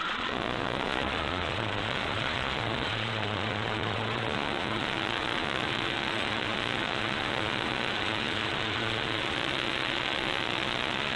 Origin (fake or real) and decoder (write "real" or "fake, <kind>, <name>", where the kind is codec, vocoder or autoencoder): fake, vocoder, Vocos